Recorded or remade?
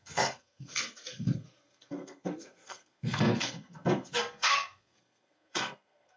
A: remade